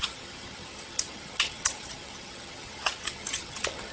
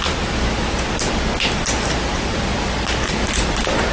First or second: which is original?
second